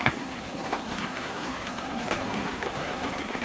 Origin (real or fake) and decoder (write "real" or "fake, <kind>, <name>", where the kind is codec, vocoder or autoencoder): fake, codec, SNAC